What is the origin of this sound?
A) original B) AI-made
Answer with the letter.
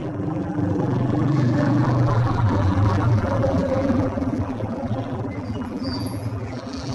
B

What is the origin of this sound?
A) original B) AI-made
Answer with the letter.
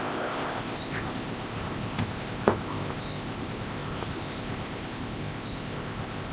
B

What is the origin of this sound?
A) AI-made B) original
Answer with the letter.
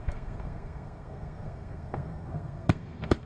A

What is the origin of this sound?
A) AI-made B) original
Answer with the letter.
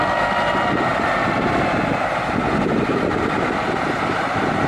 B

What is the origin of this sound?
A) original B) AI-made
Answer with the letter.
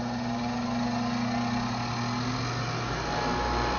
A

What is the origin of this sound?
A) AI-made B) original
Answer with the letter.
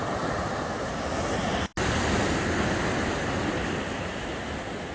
B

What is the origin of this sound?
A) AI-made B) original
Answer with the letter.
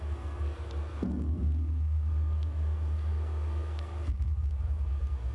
A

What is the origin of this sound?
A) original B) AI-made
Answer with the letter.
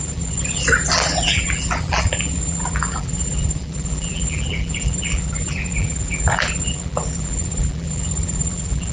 B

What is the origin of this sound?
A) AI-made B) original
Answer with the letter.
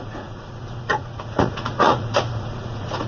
A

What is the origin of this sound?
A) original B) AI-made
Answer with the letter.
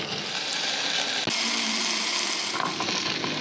A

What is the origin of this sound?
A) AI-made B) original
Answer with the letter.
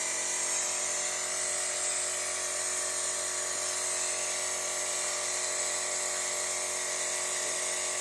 B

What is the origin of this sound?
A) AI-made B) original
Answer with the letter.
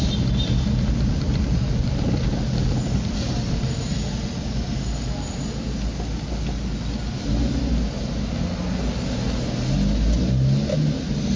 B